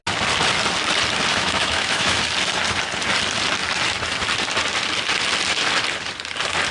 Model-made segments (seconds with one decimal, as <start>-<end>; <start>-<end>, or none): 1.3-2.2